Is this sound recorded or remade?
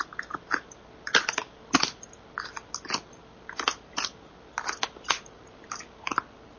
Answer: recorded